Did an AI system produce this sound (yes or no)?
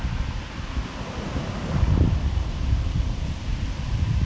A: yes